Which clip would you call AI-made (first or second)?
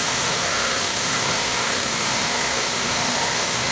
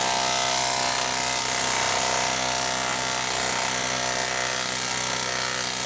first